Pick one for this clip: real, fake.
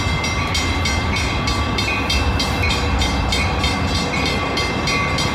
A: real